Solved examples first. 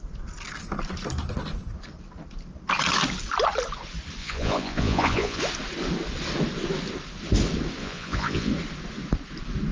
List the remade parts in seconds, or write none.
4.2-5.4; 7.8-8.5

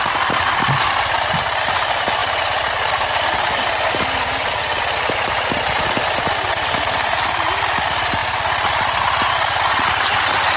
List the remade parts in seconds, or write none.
none

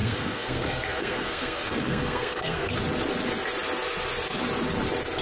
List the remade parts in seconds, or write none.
0.0-2.7

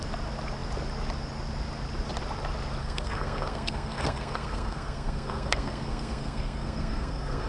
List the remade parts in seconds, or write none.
2.8-7.5